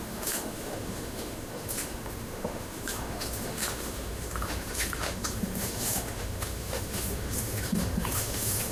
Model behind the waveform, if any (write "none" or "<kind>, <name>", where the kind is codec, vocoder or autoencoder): autoencoder, DAC-VAE